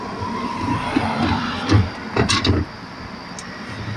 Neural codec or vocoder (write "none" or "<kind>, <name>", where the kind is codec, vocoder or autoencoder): none